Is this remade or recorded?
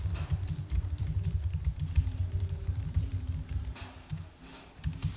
remade